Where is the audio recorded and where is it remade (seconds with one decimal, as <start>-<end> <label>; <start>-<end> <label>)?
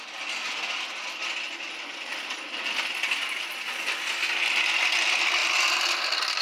0.0-6.4 recorded